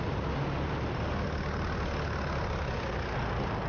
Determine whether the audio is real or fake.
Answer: real